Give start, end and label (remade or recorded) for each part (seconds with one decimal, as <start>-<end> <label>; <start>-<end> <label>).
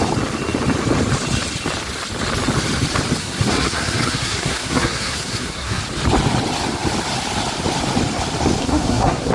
0.0-3.2 recorded; 3.2-5.8 remade; 5.8-8.6 recorded; 8.6-9.3 remade